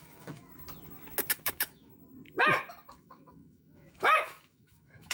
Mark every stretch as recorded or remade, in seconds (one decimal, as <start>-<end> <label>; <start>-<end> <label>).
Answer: 0.0-0.5 remade; 0.5-1.3 recorded; 1.3-1.9 remade; 1.9-2.9 recorded; 2.9-5.1 remade